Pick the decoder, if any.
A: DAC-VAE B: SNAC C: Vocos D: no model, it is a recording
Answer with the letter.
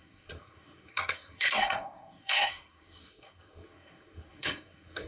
B